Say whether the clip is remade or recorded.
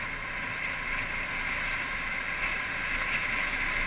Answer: recorded